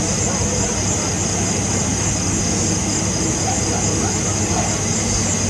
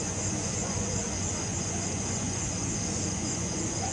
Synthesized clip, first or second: second